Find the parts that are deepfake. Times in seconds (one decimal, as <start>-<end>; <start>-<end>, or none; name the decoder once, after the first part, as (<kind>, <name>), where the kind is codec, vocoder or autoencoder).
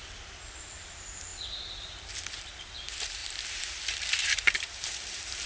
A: 0.6-1.3 (vocoder, BigVGAN v2); 2.3-3.2; 3.9-5.5